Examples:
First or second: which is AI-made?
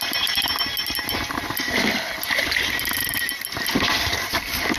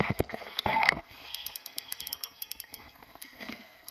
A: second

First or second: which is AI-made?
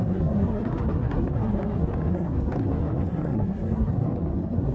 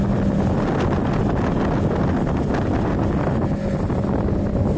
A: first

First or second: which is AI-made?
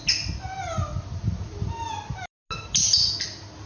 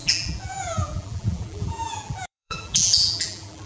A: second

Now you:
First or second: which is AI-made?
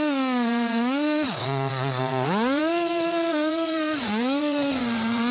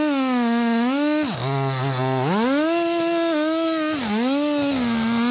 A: first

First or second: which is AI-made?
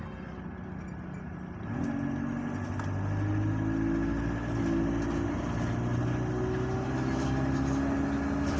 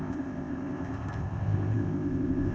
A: second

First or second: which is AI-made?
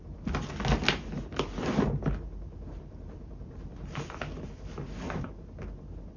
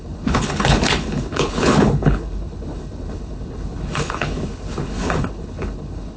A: second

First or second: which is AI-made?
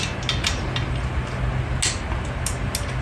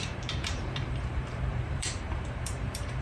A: second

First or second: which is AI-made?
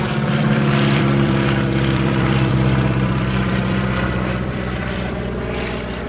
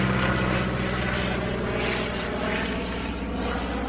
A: first